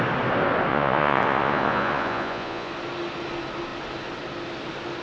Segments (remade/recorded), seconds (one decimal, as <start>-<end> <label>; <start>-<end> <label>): 0.0-0.7 recorded; 0.7-2.7 remade; 2.7-5.0 recorded

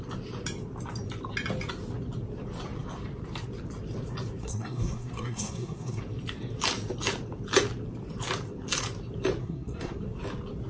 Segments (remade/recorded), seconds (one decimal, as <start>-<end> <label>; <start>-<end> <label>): 0.0-4.4 recorded; 4.4-6.0 remade; 6.0-9.4 recorded; 9.4-10.0 remade; 10.0-10.7 recorded

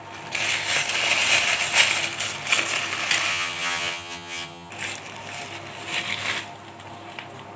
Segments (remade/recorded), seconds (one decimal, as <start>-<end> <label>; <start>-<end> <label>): 0.0-3.3 recorded; 3.3-4.7 remade; 4.7-7.6 recorded

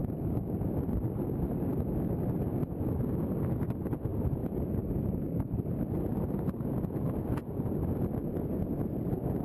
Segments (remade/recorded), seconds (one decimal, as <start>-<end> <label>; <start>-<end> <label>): 0.0-4.1 recorded; 4.1-5.8 remade; 5.8-9.4 recorded